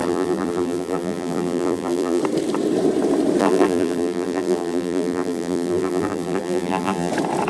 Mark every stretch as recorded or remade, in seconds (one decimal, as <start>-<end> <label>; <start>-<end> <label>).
0.0-2.2 remade; 2.2-3.4 recorded; 3.4-7.1 remade; 7.1-7.5 recorded